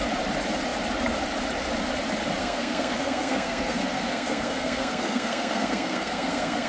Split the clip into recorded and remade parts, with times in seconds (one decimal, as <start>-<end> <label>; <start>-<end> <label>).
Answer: 0.0-2.4 recorded; 2.4-6.7 remade